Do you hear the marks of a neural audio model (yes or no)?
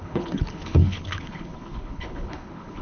yes